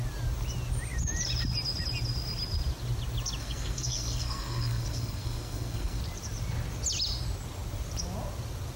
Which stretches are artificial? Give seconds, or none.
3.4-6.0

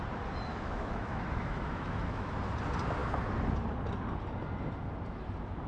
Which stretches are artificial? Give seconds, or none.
0.5-2.3

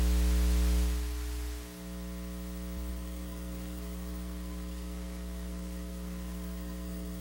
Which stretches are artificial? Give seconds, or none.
2.9-7.2

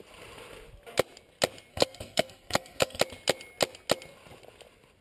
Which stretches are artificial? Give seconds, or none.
1.7-3.0

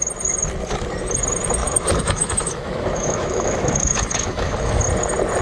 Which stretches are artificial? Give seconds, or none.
1.6-4.8

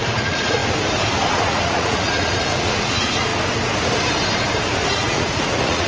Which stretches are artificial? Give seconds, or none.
0.0-0.6; 1.3-3.3; 4.9-5.9

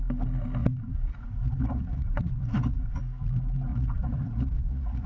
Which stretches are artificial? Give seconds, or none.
0.6-3.0; 3.7-5.1

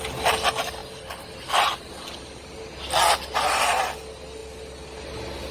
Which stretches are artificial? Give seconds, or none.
none